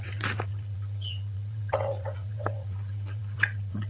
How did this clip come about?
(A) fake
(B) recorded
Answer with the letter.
A